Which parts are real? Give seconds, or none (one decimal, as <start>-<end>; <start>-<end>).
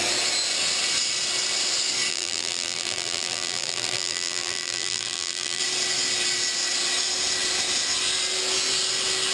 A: 0.0-2.1; 5.6-9.3